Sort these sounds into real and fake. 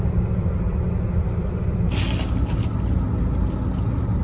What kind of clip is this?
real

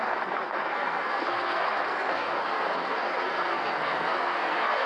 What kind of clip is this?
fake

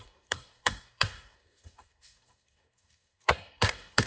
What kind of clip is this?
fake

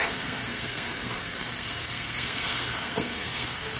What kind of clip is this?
fake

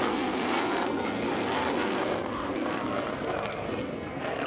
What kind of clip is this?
fake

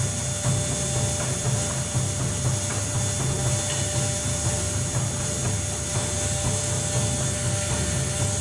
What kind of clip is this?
real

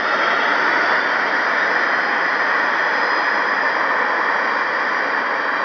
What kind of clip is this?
real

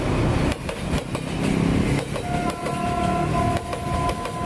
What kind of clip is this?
real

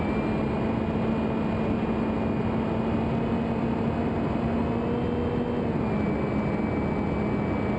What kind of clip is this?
real